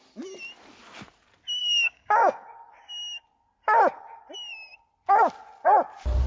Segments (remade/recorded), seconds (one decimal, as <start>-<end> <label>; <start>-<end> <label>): 0.0-1.6 recorded; 1.6-2.5 remade; 2.5-6.3 recorded